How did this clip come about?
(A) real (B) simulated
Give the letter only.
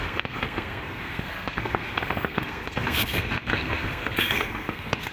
B